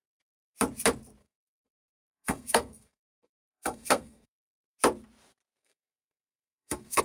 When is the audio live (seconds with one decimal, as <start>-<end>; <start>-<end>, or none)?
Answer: 0.0-1.2; 4.3-5.6